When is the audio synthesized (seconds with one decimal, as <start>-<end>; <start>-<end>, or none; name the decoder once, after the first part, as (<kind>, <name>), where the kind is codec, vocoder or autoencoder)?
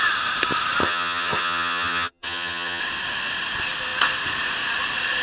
0.8-2.8 (vocoder, HiFi-GAN)